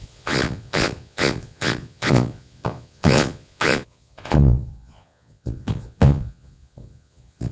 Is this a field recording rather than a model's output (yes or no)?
no